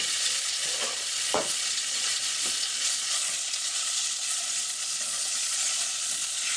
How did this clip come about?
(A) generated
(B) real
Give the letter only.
A